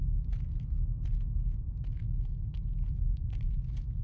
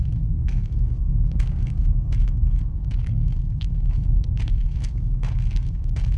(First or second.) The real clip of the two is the first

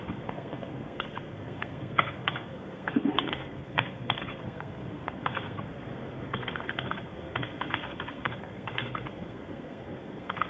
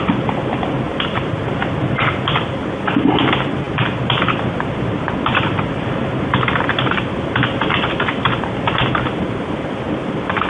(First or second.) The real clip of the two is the second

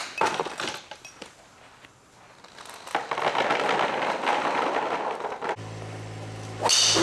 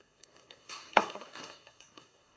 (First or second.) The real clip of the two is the first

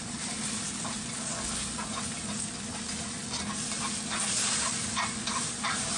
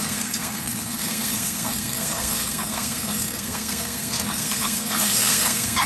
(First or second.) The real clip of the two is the first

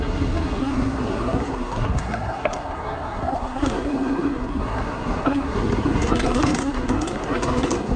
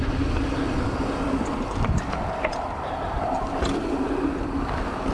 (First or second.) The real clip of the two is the second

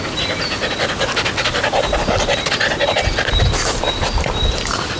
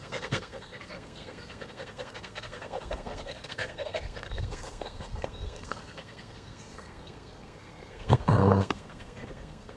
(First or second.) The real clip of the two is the first